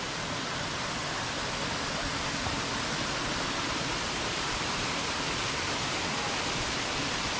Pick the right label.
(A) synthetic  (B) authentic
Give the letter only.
B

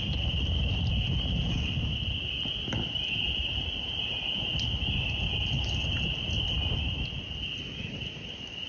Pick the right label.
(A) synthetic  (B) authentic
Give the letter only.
B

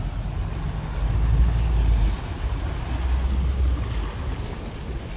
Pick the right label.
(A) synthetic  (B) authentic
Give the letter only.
B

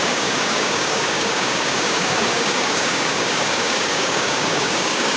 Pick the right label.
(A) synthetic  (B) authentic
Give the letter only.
A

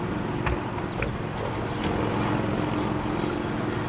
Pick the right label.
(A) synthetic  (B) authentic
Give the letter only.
B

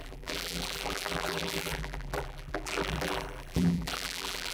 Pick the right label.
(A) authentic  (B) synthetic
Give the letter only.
B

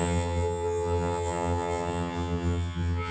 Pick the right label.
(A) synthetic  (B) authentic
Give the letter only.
A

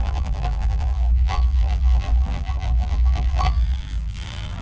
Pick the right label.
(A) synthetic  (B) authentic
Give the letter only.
A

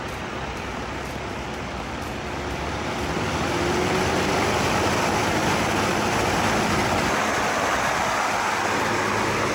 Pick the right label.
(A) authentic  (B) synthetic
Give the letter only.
A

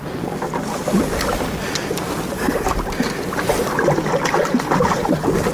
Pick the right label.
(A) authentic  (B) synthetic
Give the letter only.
A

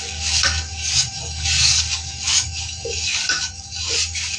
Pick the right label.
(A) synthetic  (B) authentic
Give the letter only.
A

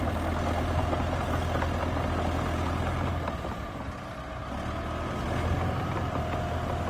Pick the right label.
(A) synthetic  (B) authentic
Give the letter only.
B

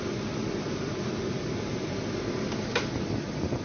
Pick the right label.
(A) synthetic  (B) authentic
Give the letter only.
B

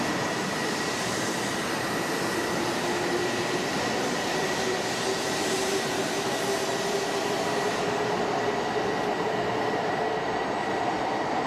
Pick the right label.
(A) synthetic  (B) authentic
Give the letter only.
B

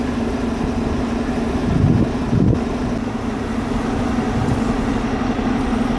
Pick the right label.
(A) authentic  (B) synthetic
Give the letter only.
A